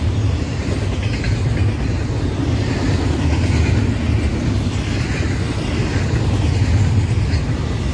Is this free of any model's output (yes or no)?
yes